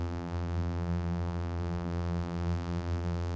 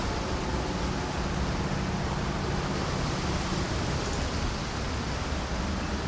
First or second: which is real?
second